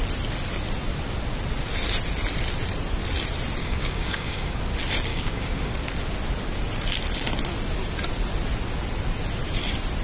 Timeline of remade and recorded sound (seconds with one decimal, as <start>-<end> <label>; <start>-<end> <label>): 0.0-3.6 recorded; 3.6-4.6 remade; 4.6-5.1 recorded; 5.1-5.7 remade; 5.7-10.0 recorded

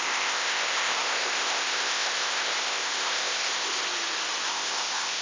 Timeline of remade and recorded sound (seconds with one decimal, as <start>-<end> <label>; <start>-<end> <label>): 0.0-3.8 remade; 3.8-4.5 recorded; 4.5-5.2 remade

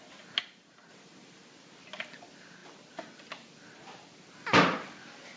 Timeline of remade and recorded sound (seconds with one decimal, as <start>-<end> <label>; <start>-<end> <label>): 0.0-5.4 recorded

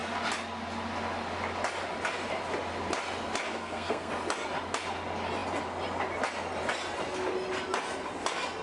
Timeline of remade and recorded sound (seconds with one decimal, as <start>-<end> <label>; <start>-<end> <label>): 0.0-3.5 recorded; 3.5-4.1 remade; 4.1-8.6 recorded